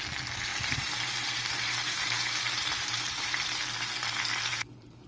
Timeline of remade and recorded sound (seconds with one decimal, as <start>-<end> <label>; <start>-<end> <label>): 0.0-0.5 recorded; 0.5-3.6 remade; 3.6-5.1 recorded